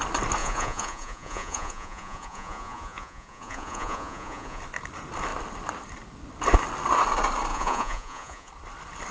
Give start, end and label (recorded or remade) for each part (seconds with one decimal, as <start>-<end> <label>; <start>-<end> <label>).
0.0-0.4 recorded; 0.4-4.6 remade; 4.6-7.5 recorded; 7.5-8.5 remade; 8.5-9.1 recorded